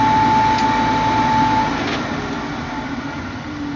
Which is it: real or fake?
real